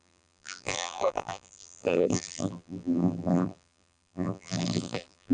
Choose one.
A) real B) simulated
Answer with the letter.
B